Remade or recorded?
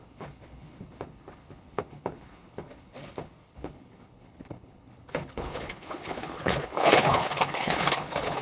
remade